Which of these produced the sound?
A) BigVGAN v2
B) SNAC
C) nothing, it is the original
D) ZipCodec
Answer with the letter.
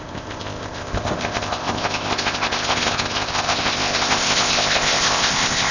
D